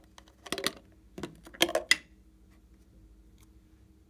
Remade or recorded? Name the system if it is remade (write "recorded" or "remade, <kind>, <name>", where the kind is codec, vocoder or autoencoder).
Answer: recorded